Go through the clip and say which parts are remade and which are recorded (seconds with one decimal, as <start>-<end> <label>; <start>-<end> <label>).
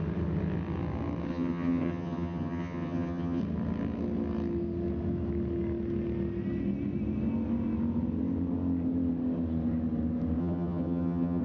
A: 0.0-1.3 recorded; 1.3-3.4 remade; 3.4-10.4 recorded; 10.4-11.4 remade